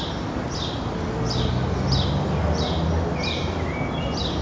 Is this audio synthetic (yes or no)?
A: no